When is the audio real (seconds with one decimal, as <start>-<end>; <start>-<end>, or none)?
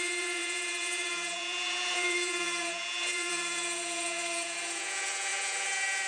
none